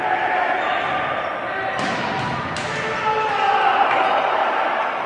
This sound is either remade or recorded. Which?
recorded